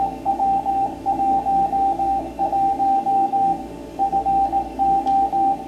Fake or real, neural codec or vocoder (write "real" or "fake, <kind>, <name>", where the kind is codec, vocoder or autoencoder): fake, codec, DAC